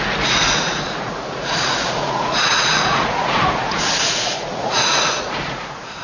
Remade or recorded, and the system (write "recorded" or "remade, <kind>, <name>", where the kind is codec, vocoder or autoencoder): remade, vocoder, Vocos